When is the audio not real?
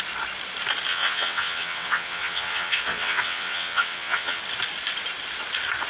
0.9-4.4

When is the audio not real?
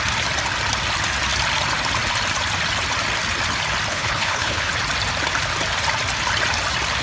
3.9-4.7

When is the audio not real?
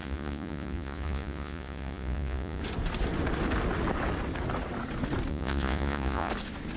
0.0-2.6; 5.3-6.3